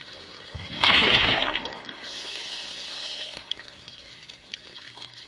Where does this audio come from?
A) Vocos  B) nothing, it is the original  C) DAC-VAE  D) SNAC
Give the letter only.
D